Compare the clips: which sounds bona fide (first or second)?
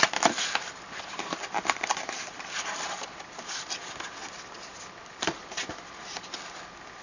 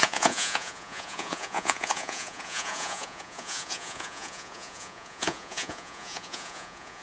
first